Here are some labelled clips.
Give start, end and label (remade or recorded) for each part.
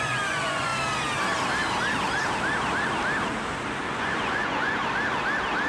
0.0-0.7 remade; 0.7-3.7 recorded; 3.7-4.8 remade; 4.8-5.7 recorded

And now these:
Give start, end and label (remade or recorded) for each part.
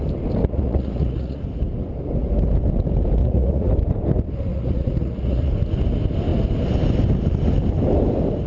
0.0-0.4 recorded; 0.4-1.4 remade; 1.4-3.2 recorded; 3.2-3.7 remade; 3.7-4.5 recorded; 4.5-5.5 remade; 5.5-8.5 recorded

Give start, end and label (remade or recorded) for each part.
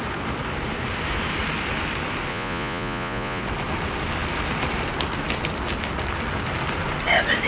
0.0-2.3 recorded; 2.3-3.4 remade; 3.4-7.5 recorded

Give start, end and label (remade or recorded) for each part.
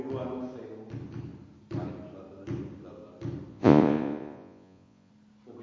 0.0-3.5 recorded; 3.5-5.1 remade; 5.1-5.6 recorded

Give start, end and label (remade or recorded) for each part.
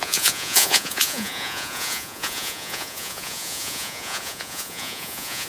0.0-5.5 remade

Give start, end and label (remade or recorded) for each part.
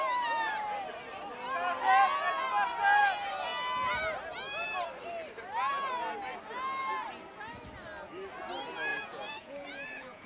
0.0-8.9 recorded; 8.9-10.3 remade